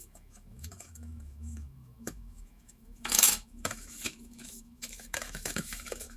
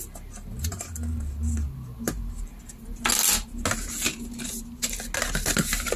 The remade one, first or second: first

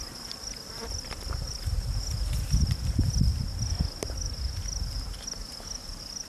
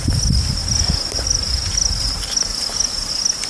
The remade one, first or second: first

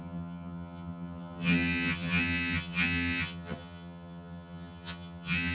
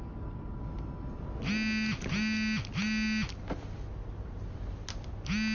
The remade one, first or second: first